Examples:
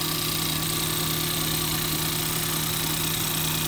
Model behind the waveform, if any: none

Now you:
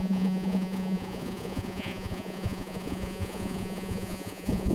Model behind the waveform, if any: vocoder, Vocos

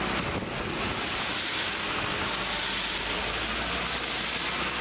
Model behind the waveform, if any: none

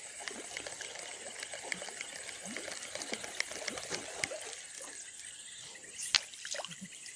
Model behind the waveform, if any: none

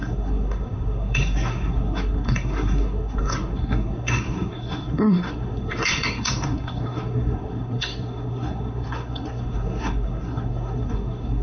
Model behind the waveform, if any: codec, SNAC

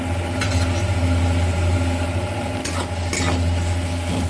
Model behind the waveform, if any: none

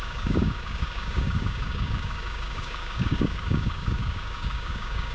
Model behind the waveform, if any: codec, DAC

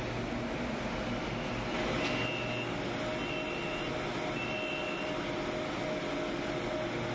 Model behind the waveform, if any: none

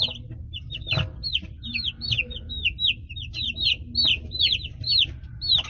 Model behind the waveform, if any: none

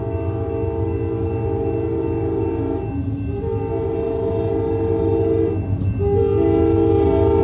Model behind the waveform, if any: none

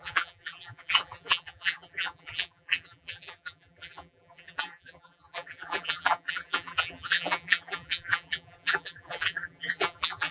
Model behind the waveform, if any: vocoder, BigVGAN v2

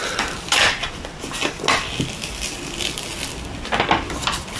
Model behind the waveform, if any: none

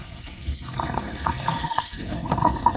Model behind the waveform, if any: codec, SNAC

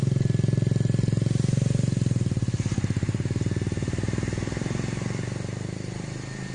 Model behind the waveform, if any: none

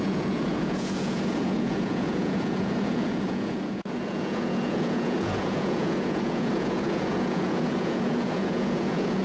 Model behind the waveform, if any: vocoder, Vocos